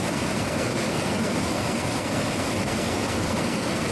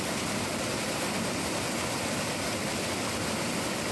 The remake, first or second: first